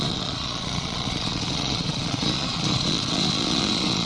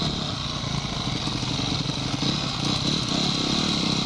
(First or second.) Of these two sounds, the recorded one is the second